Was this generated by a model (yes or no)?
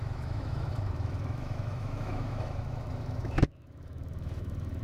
yes